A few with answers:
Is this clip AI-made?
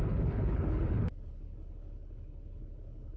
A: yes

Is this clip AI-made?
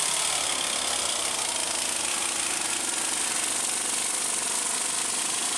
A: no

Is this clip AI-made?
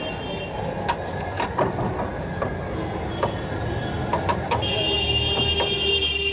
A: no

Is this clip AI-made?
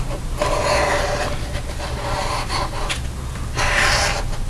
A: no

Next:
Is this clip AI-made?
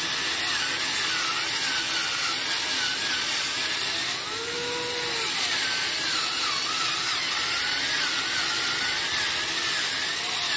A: no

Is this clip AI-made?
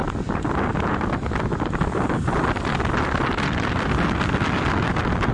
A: no